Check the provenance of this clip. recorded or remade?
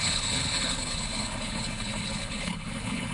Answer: remade